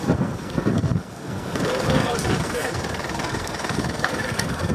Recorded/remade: remade